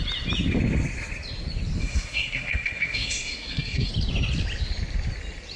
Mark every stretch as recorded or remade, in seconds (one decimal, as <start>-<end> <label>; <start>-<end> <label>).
0.0-1.8 recorded; 1.8-3.9 remade; 3.9-5.6 recorded